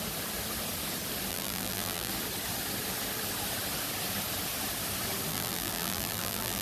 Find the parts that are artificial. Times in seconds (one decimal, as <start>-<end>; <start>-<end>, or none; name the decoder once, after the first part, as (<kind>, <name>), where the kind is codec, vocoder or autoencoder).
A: 1.3-2.1 (vocoder, BigVGAN v2); 5.3-6.6